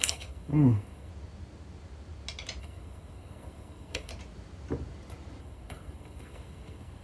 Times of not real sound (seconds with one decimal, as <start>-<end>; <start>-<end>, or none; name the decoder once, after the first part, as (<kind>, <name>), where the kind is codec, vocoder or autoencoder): 0.0-1.1 (codec, SNAC); 2.6-4.1; 5.4-7.0